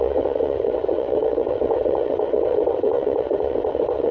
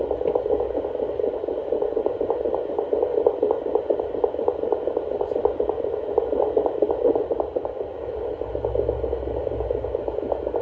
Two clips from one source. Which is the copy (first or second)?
first